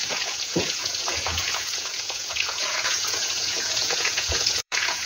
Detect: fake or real fake